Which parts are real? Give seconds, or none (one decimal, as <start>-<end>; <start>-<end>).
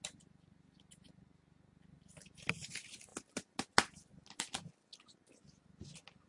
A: 0.0-6.3